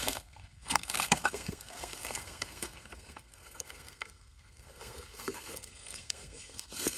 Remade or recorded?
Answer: remade